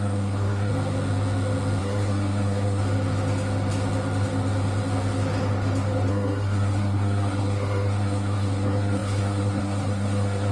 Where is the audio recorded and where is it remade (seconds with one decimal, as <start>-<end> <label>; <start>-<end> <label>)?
0.0-0.7 remade; 0.7-1.8 recorded; 1.8-2.8 remade; 2.8-6.1 recorded; 6.1-10.5 remade